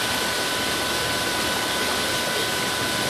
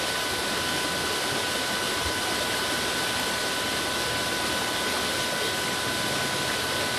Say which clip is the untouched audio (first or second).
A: second